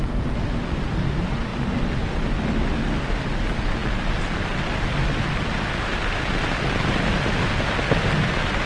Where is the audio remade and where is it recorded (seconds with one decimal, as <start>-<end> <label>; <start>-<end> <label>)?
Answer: 0.0-8.7 recorded